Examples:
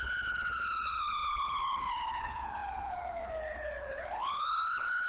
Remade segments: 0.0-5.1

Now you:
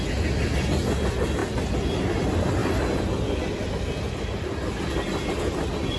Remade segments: none

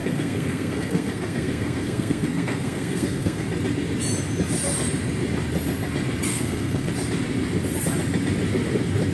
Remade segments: 0.0-3.5; 6.3-6.9